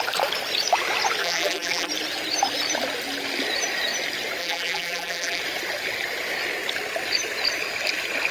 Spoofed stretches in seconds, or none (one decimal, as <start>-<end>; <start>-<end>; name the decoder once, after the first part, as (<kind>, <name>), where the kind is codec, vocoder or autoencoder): 1.2-1.9 (vocoder, BigVGAN v2); 4.4-5.4